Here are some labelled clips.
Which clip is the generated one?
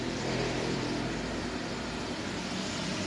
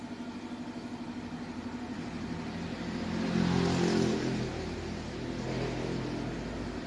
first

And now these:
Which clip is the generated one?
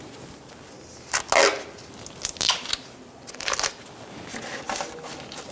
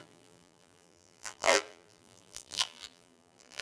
second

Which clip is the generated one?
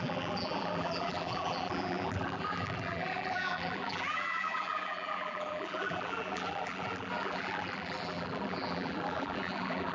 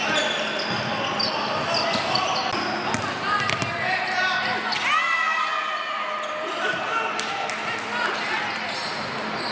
first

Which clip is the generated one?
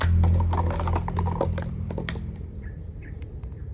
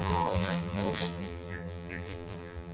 second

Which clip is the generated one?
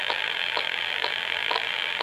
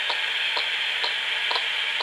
first